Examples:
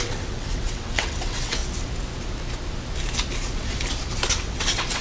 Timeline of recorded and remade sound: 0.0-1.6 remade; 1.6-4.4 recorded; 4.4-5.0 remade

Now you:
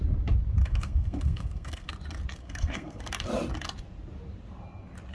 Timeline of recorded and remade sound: 0.0-0.6 recorded; 0.6-1.9 remade; 1.9-2.4 recorded; 2.4-3.1 remade; 3.1-5.1 recorded

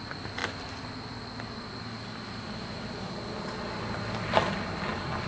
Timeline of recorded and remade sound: 0.0-5.3 recorded

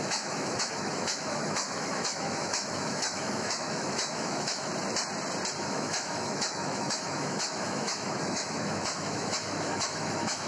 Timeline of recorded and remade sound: 0.0-4.7 remade; 4.7-5.6 recorded; 5.6-10.5 remade

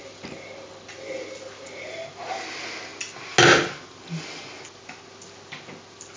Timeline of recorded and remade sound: 0.0-6.2 recorded

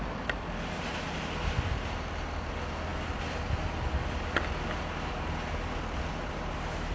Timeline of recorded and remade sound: 0.0-6.9 recorded

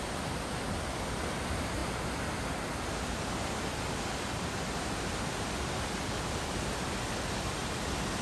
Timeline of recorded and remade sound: 0.0-8.2 recorded